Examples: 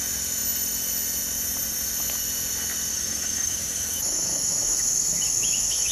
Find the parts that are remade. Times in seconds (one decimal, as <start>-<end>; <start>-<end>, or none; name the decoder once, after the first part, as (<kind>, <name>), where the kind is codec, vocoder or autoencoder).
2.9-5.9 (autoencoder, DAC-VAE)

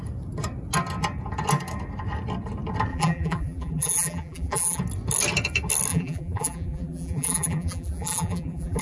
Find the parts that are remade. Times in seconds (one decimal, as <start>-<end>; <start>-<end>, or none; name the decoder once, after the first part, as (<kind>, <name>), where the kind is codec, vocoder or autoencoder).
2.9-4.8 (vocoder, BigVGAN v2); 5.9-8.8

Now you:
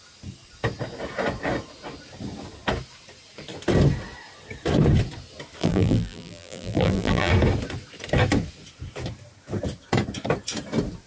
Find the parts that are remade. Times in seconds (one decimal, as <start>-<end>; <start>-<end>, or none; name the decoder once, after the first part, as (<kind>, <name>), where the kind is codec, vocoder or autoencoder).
5.6-7.3 (vocoder, BigVGAN v2)

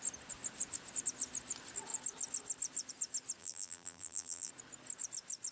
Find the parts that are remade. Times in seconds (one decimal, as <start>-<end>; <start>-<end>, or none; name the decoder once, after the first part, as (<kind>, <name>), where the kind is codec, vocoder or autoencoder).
3.4-4.5 (vocoder, BigVGAN v2)

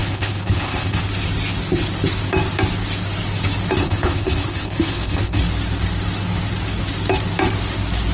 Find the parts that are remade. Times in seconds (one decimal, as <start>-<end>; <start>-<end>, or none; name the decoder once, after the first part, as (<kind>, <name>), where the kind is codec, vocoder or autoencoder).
0.0-1.0 (codec, HILCodec); 3.8-5.4

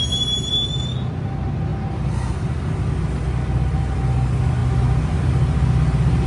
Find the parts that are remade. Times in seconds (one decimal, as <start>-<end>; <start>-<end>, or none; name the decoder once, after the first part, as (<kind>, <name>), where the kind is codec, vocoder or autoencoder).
none

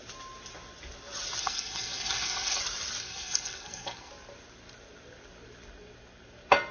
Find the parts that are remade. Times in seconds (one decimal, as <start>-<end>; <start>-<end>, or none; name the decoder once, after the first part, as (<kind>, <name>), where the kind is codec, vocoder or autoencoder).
1.4-2.6 (codec, SNAC); 3.0-4.1

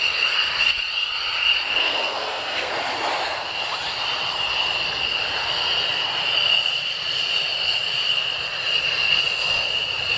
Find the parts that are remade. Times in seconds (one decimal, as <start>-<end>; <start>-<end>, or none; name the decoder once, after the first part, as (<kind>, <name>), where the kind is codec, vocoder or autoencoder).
1.8-2.7 (codec, SNAC)